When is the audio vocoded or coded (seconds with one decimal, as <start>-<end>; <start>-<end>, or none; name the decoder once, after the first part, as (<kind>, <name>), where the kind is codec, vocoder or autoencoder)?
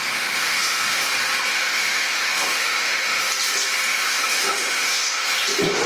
0.0-1.1 (autoencoder, DAC-VAE); 1.5-3.3; 3.9-5.3